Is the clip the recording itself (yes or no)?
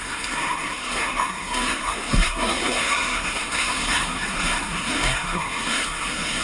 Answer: no